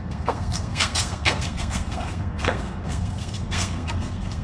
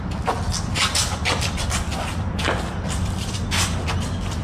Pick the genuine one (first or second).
second